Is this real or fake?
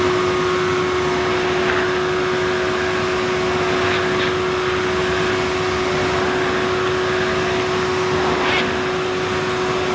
real